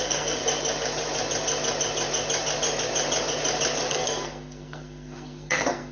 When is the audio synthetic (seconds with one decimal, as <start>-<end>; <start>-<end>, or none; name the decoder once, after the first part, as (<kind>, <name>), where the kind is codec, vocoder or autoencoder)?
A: 0.0-0.4 (codec, SNAC); 3.9-5.9